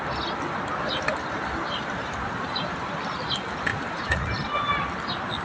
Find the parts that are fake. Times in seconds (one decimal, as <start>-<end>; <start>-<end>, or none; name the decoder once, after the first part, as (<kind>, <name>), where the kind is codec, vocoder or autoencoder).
3.7-4.3 (vocoder, Vocos)